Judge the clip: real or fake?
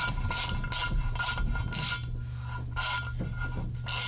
real